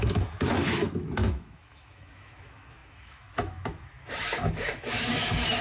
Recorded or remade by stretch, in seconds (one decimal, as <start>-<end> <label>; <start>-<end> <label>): 0.0-5.6 remade